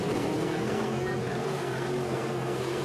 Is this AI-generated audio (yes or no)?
yes